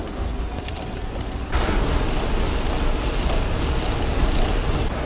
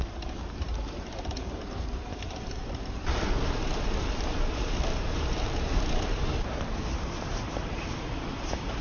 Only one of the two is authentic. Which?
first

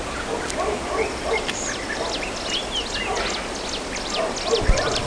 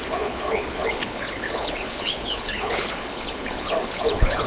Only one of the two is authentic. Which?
first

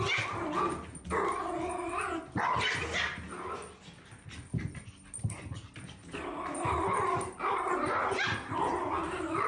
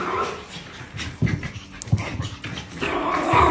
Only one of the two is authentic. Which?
first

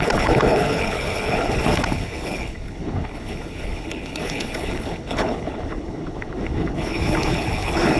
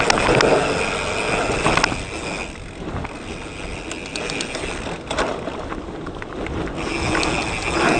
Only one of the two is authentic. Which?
second